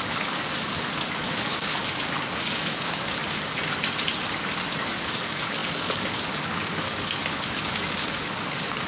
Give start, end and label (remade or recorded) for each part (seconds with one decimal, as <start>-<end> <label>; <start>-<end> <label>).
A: 0.0-3.2 remade; 3.2-4.9 recorded; 4.9-8.9 remade